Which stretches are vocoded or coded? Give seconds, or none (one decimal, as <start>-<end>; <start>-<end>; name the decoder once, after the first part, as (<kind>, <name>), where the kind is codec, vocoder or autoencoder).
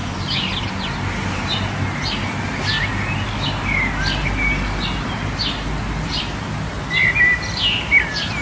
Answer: none